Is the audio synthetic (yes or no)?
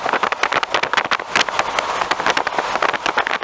no